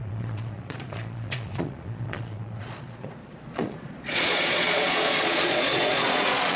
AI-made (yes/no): yes